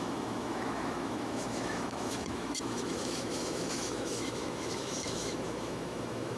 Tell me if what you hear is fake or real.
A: fake